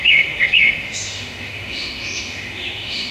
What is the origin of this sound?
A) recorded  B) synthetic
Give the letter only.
B